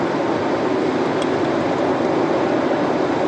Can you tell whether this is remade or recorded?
recorded